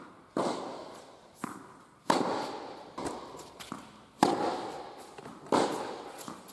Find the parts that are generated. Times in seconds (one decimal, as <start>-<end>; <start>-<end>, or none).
0.8-4.3